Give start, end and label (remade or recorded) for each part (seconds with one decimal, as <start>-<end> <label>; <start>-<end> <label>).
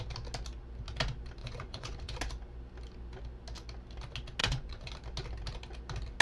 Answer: 0.0-1.4 recorded; 1.4-2.2 remade; 2.2-4.4 recorded; 4.4-4.9 remade; 4.9-6.2 recorded